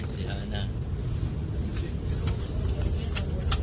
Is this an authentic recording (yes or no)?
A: yes